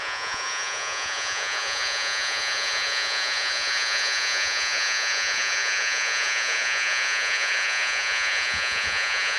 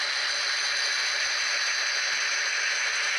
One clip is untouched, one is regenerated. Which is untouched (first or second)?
second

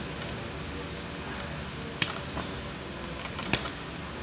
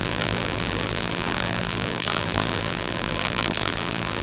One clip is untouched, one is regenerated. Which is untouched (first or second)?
first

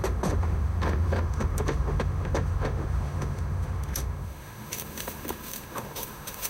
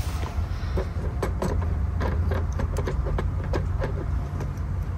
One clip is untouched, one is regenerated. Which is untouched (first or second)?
second